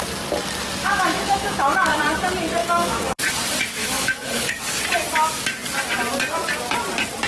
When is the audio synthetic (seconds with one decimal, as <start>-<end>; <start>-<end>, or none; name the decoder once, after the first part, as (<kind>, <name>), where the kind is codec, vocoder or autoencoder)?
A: 0.8-2.0 (autoencoder, DAC-VAE); 2.6-3.2; 3.8-4.5